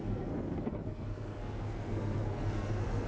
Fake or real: fake